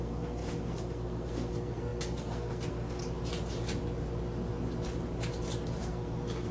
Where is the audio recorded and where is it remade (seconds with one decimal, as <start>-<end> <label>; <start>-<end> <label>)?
0.0-3.0 remade; 3.0-5.8 recorded; 5.8-6.5 remade